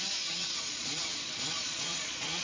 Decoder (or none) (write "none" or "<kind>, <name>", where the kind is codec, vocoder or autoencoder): vocoder, Vocos